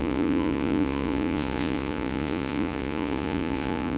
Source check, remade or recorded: remade